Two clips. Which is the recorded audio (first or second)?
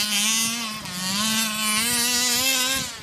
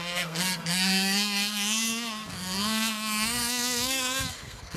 first